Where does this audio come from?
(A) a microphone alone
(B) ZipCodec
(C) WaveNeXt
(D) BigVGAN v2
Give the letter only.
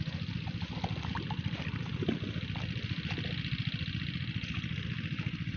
A